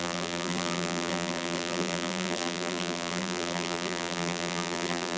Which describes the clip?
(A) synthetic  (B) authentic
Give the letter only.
A